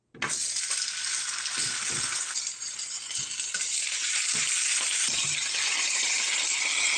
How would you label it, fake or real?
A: real